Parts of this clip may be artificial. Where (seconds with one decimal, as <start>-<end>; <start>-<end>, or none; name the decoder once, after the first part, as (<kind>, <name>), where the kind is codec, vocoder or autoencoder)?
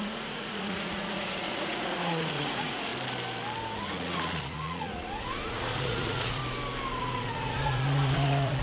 0.0-2.9 (vocoder, Vocos); 3.8-6.4; 7.0-8.6